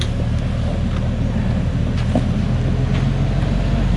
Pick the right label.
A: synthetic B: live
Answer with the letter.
B